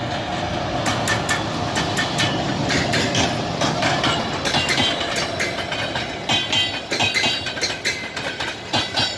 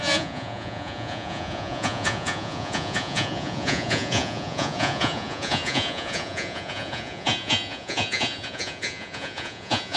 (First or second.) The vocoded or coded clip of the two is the second